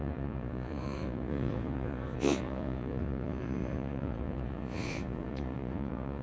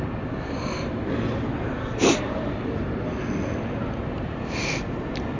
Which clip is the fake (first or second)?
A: first